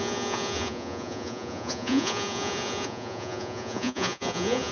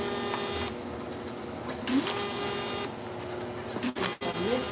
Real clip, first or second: second